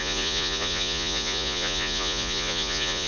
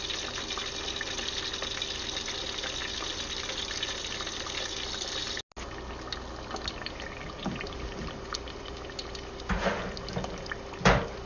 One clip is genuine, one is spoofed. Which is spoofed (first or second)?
first